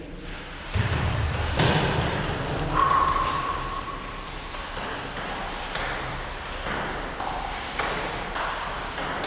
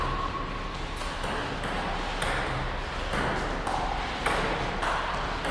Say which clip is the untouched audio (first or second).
second